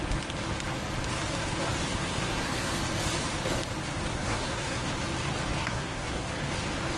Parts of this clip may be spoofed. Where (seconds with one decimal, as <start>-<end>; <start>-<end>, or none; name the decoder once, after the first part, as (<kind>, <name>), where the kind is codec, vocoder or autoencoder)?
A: 1.9-2.8 (codec, SNAC); 4.1-4.9; 5.6-6.3